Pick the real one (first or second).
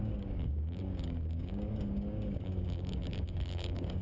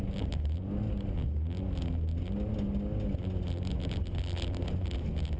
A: second